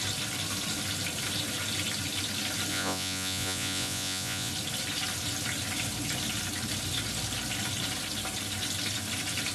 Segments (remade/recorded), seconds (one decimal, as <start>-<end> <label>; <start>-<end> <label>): 0.0-2.7 recorded; 2.7-4.5 remade; 4.5-9.5 recorded